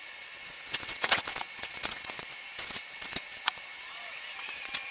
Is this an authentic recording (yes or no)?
no